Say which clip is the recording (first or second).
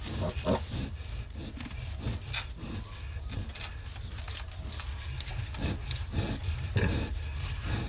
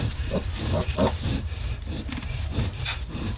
first